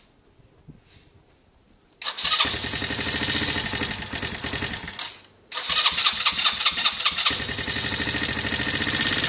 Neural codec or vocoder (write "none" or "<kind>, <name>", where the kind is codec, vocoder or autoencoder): none